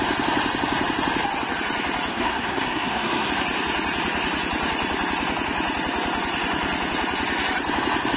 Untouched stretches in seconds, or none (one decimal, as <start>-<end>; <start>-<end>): 0.0-2.1; 3.3-8.2

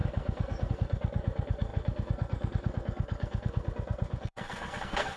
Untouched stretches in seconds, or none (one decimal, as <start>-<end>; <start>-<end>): none

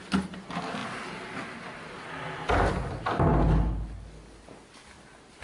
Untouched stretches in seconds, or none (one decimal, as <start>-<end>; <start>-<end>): 0.0-5.4

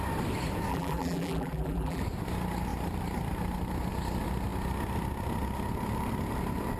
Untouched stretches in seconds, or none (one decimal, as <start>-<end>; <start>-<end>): 0.0-0.7; 2.0-6.8

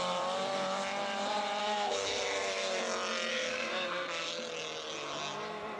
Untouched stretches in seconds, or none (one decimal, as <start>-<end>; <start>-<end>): 0.0-1.6; 2.8-3.3; 4.3-5.8